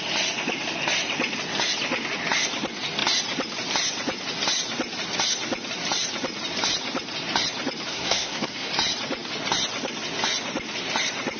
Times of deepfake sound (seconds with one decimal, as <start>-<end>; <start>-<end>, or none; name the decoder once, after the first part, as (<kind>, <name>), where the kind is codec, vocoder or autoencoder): 7.9-8.7 (codec, SNAC)